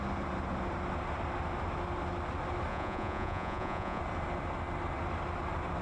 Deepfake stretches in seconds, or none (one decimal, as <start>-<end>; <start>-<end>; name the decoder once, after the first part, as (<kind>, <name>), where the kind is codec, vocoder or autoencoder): 2.7-4.0 (vocoder, Vocos)